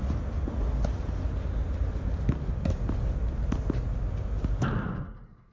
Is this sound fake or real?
real